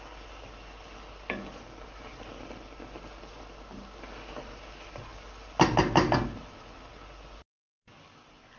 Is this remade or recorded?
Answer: recorded